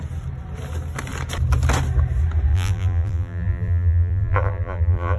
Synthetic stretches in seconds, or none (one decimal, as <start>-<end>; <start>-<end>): 2.5-5.2